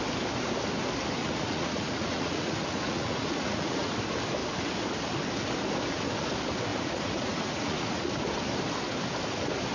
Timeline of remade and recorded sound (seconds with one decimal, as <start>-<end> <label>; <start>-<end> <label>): 0.0-1.2 recorded; 1.2-3.9 remade; 3.9-6.7 recorded; 6.7-8.1 remade; 8.1-9.7 recorded